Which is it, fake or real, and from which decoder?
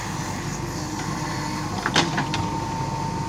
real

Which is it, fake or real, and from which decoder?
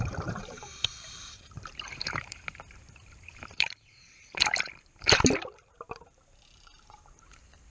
fake, vocoder, BigVGAN v2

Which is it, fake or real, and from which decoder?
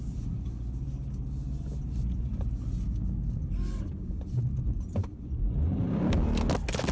real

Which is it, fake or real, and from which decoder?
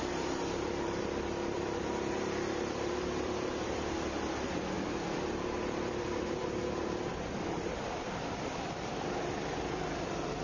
fake, vocoder, BigVGAN v2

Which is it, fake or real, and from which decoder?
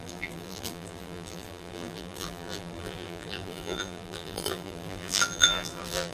fake, vocoder, BigVGAN v2